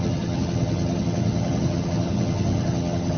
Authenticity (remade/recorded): remade